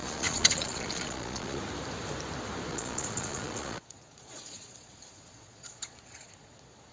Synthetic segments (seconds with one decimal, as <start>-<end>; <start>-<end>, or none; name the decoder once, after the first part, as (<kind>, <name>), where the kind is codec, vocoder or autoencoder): 0.0-1.6 (vocoder, Vocos); 2.7-6.9